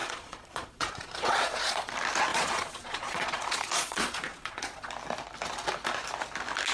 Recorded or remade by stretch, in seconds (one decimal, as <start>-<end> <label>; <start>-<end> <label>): 0.0-1.9 remade; 1.9-2.3 recorded; 2.3-4.9 remade; 4.9-6.7 recorded